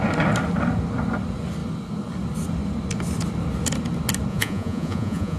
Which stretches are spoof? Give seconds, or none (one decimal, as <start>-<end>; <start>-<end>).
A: 4.3-5.4